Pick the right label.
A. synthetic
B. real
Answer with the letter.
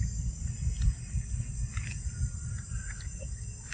B